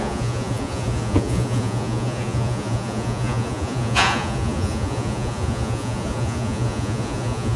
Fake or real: fake